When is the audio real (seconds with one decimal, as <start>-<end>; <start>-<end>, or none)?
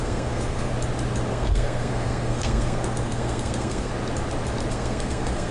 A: 0.7-1.3; 3.9-4.7